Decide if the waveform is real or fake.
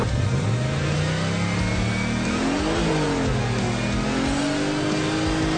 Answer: real